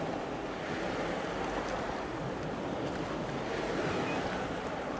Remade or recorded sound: recorded